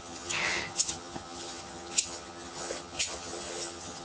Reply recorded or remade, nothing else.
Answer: remade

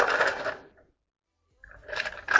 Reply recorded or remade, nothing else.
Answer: recorded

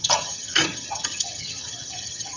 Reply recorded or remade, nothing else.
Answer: remade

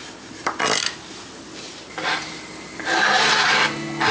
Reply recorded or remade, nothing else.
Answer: recorded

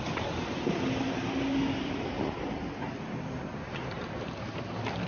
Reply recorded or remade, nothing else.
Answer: recorded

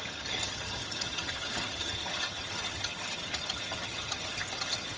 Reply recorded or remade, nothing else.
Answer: remade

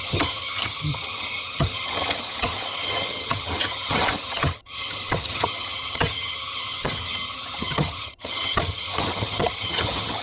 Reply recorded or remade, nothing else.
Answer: remade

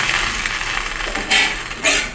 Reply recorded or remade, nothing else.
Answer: recorded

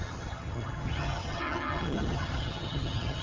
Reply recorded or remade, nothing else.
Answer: remade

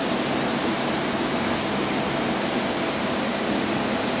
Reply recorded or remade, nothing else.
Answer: recorded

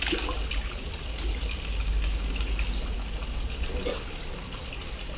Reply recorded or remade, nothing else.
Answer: recorded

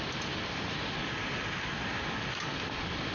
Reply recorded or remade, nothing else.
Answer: recorded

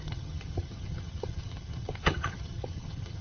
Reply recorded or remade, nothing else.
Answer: remade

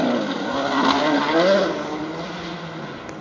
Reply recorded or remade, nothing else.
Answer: recorded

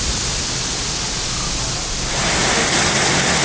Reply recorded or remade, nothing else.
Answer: recorded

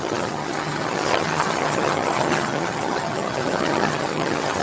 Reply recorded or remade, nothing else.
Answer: remade